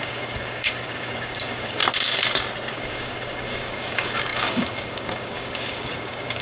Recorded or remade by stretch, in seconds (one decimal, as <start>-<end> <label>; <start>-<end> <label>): 0.0-1.8 remade; 1.8-2.7 recorded; 2.7-6.4 remade